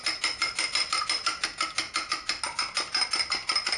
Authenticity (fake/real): real